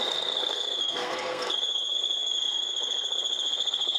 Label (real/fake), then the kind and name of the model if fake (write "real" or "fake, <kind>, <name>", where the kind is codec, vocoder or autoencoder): fake, codec, SNAC